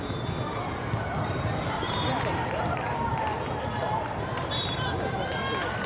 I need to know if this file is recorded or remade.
remade